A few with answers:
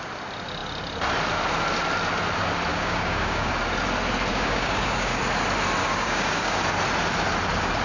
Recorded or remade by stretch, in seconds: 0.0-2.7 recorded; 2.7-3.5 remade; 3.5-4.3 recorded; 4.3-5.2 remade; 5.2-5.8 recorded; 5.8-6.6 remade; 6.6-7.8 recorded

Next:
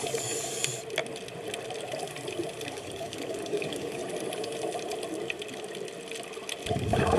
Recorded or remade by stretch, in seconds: 0.0-0.6 remade; 0.6-2.7 recorded; 2.7-4.0 remade; 4.0-6.7 recorded; 6.7-7.2 remade